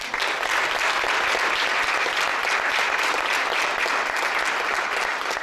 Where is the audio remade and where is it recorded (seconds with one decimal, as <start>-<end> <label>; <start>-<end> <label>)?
0.0-5.4 recorded

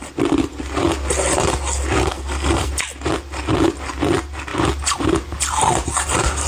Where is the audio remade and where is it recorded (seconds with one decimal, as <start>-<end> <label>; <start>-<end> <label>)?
0.0-2.0 recorded; 2.0-2.7 remade; 2.7-6.5 recorded

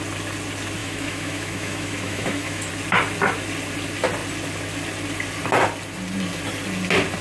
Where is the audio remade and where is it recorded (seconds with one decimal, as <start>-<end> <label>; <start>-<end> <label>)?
0.0-0.8 recorded; 0.8-2.7 remade; 2.7-7.2 recorded

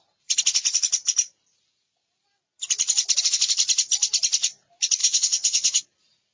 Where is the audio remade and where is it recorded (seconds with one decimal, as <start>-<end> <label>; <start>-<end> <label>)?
0.0-5.0 recorded; 5.0-5.8 remade; 5.8-6.3 recorded

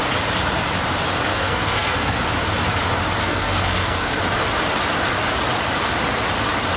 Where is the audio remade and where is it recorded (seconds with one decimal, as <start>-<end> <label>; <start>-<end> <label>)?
0.0-1.3 recorded; 1.3-2.2 remade; 2.2-3.2 recorded; 3.2-4.2 remade; 4.2-6.8 recorded

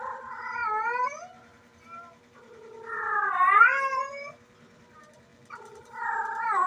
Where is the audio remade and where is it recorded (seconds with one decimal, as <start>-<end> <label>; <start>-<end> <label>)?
0.0-5.3 remade; 5.3-6.7 recorded

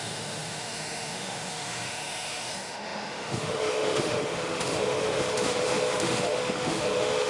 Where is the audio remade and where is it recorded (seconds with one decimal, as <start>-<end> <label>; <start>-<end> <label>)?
0.0-7.3 remade

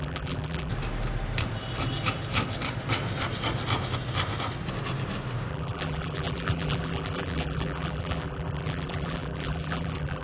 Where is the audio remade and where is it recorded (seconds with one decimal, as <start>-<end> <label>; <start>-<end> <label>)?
0.0-0.7 remade; 0.7-5.5 recorded; 5.5-10.2 remade